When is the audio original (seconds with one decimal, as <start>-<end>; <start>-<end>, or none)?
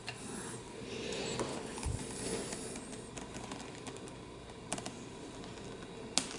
0.0-1.5; 2.0-6.4